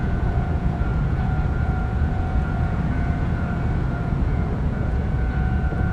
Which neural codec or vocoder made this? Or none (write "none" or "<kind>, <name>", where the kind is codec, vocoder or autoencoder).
vocoder, Vocos